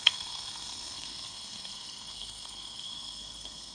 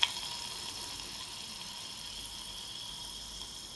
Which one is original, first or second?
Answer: second